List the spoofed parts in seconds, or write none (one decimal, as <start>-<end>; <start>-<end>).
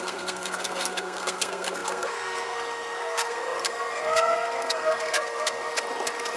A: 0.0-5.7